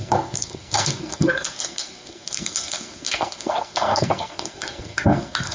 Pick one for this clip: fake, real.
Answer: fake